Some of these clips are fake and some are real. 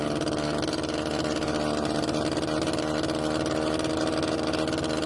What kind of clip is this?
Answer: real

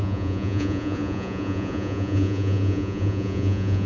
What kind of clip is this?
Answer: fake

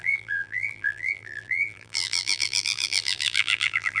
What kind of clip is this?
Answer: fake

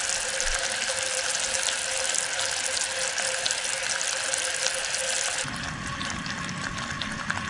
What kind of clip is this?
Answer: real